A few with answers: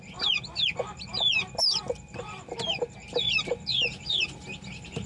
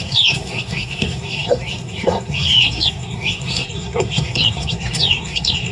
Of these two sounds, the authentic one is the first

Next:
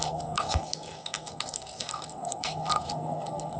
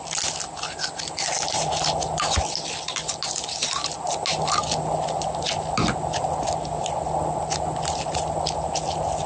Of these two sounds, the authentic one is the second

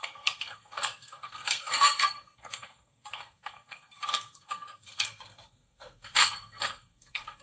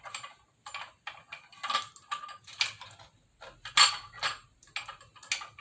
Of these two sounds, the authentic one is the second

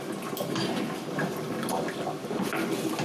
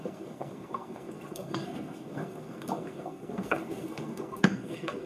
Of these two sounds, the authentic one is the first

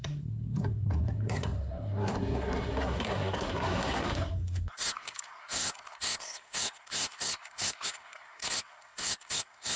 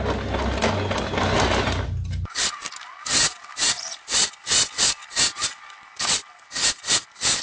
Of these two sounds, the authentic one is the second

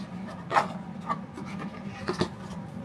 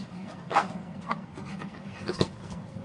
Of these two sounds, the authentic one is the first